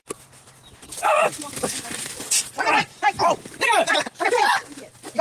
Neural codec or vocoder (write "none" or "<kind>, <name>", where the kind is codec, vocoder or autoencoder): none